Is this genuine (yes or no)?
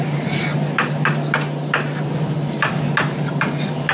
yes